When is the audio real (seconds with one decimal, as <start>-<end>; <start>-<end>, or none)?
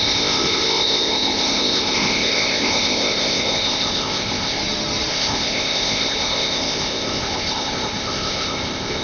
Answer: 4.6-5.1